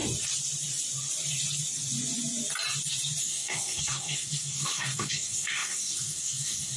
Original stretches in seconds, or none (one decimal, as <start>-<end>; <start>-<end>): 0.0-3.2